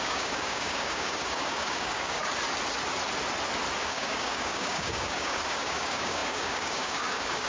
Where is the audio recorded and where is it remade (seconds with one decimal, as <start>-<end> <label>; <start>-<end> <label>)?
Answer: 0.0-2.2 remade; 2.2-3.8 recorded; 3.8-7.5 remade